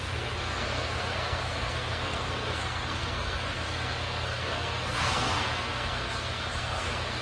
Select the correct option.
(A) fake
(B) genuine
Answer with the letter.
A